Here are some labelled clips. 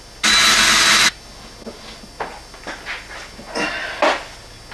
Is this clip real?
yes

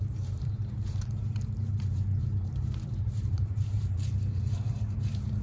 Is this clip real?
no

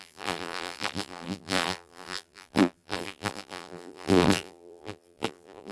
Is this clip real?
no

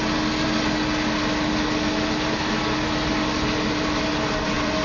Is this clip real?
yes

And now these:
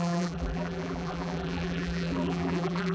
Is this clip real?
no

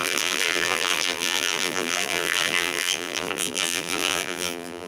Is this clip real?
no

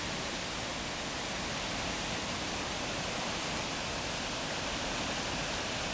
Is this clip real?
yes